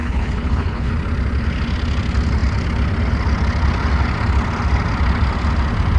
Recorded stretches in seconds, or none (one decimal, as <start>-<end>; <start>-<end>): 0.9-6.0